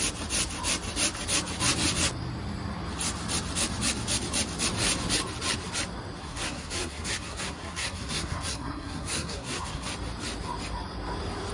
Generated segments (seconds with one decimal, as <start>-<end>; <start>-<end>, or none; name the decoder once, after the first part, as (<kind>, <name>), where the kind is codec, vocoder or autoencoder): 6.2-9.9 (codec, SNAC)